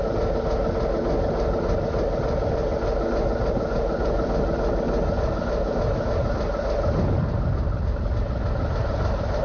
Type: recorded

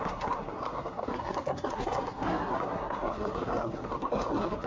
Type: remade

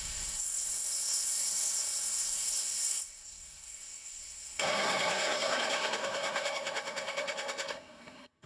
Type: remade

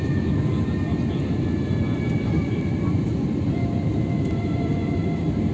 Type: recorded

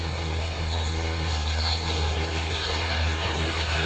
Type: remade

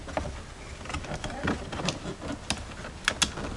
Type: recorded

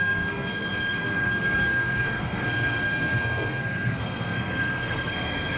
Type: remade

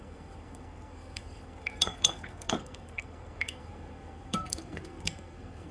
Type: remade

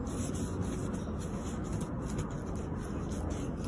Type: recorded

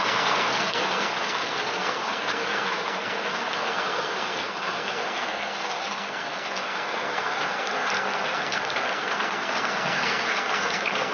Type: remade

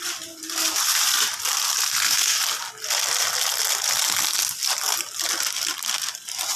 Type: recorded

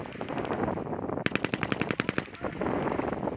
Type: recorded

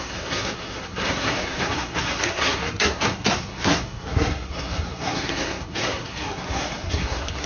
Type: remade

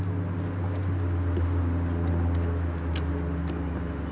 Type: recorded